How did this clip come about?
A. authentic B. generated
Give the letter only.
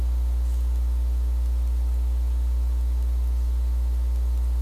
A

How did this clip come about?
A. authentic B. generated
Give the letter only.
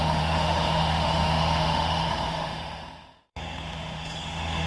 B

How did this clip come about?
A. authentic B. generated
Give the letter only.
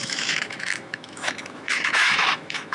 B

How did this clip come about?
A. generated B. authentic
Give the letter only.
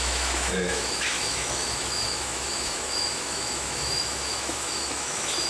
A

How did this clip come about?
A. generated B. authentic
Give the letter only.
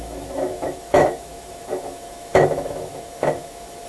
A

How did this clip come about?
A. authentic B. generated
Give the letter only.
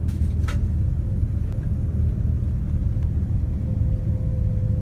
A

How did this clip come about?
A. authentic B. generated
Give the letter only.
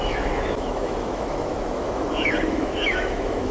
B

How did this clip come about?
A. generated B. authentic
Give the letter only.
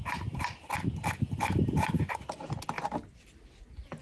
B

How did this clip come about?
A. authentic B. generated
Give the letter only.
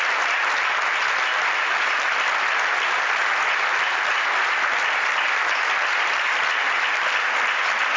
A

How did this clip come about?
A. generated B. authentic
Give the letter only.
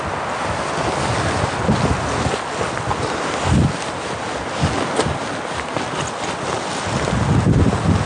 B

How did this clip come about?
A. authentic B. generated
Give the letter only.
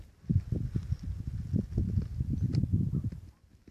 A